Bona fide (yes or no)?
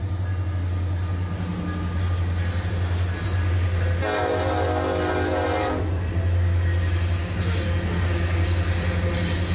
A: yes